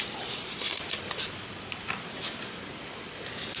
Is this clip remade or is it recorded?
recorded